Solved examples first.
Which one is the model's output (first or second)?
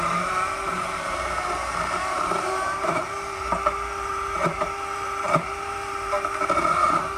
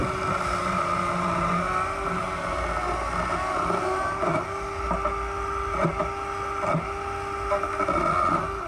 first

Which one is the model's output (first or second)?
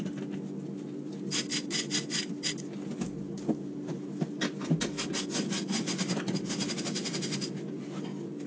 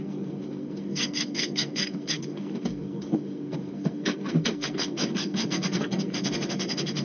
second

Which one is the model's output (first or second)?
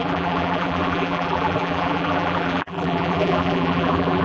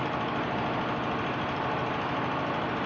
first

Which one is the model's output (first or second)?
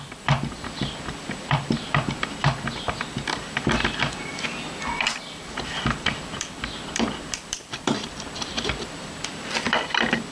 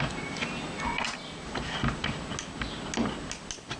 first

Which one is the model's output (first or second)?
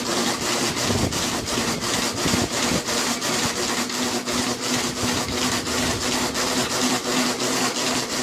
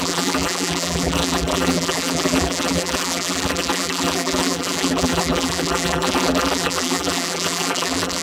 second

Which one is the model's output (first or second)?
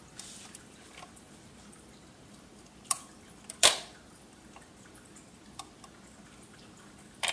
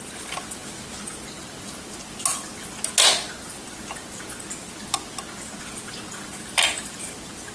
first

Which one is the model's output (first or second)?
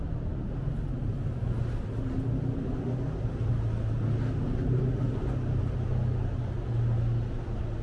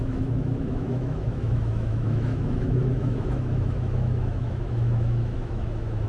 second